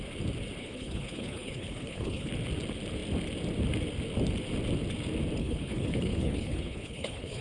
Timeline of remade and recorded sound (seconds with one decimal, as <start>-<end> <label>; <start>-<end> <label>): 0.0-0.6 recorded; 0.6-2.3 remade; 2.3-5.4 recorded; 5.4-7.4 remade